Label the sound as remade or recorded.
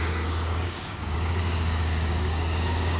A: remade